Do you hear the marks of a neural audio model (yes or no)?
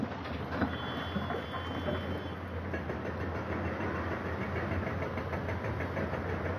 no